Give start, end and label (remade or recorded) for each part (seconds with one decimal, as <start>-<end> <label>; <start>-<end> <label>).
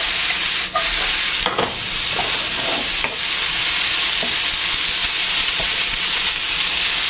0.0-5.0 recorded; 5.0-6.3 remade; 6.3-7.1 recorded